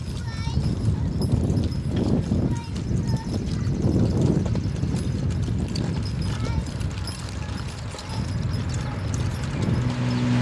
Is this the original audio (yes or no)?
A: yes